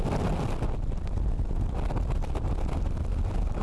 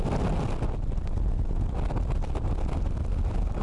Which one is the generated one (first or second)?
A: first